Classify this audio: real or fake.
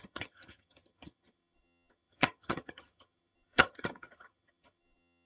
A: fake